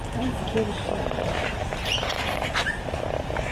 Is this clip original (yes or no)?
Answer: yes